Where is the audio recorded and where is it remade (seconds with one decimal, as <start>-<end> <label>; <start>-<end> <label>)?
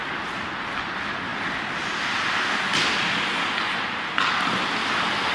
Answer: 0.0-5.3 recorded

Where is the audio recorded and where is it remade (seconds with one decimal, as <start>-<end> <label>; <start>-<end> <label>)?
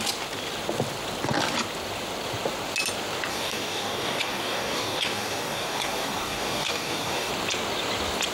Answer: 0.0-3.3 recorded; 3.3-7.3 remade; 7.3-8.3 recorded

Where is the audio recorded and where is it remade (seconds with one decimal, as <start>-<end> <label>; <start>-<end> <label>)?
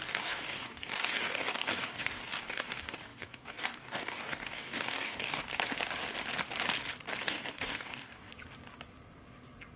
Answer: 0.0-5.5 remade; 5.5-7.2 recorded; 7.2-8.3 remade; 8.3-9.8 recorded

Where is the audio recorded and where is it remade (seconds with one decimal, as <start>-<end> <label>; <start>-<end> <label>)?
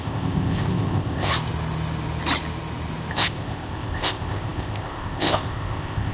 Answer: 0.0-1.3 remade; 1.3-3.1 recorded; 3.1-6.1 remade